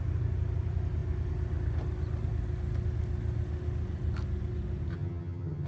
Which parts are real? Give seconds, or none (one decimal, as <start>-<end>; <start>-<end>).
0.0-4.9